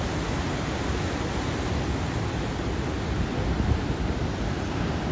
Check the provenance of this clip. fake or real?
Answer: real